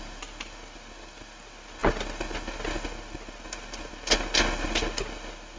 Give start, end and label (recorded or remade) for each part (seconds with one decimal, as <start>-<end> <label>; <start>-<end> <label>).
0.0-5.6 recorded